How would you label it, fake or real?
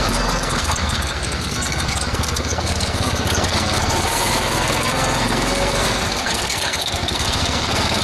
fake